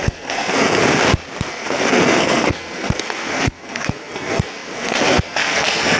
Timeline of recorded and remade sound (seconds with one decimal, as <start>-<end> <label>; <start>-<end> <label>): 0.0-0.8 remade; 0.8-1.4 recorded; 1.4-6.0 remade